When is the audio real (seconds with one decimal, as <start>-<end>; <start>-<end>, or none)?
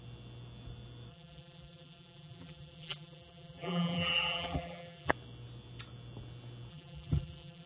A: 0.0-1.1; 5.1-6.7